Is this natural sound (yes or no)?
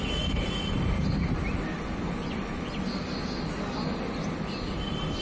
yes